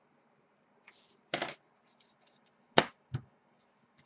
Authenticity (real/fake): real